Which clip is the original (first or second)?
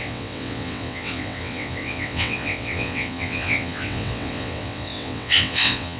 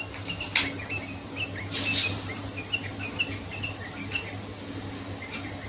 second